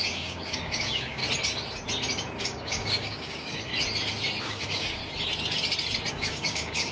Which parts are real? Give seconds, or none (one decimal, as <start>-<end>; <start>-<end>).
1.2-2.4; 3.7-4.4; 5.0-6.1